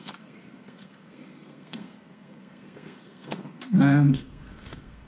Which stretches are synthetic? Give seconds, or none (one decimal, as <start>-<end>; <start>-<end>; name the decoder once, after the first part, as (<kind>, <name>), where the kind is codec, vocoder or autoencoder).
0.0-5.1 (codec, SNAC)